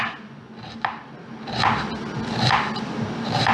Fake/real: real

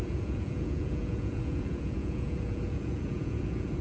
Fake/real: fake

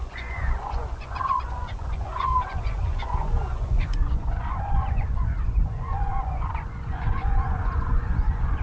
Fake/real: fake